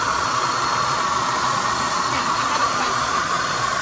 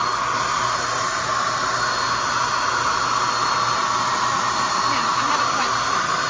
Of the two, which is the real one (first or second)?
second